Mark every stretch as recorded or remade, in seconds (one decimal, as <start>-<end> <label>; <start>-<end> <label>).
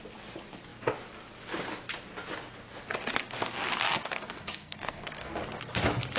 0.0-3.8 recorded; 3.8-5.4 remade; 5.4-6.2 recorded